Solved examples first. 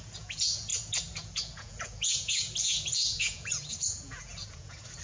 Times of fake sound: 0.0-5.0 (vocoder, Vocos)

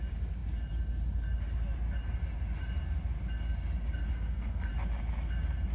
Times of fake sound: 4.1-4.7 (codec, SNAC)

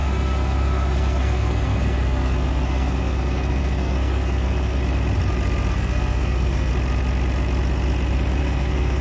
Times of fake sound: 0.0-4.8 (codec, SNAC); 5.7-6.7; 8.4-9.0

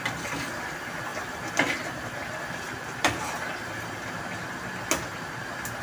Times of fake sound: 1.1-4.4 (vocoder, BigVGAN v2)

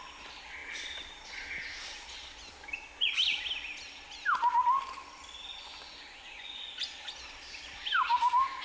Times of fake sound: 5.5-6.7 (vocoder, Vocos)

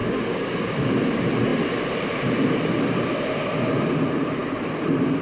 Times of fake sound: 0.0-0.9 (codec, DAC)

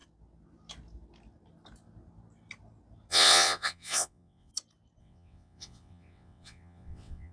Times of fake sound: 3.1-4.5 (vocoder, WaveNeXt); 5.0-7.3

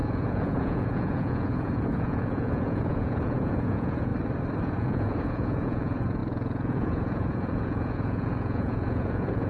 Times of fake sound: 0.0-4.1 (vocoder, Vocos); 4.6-9.5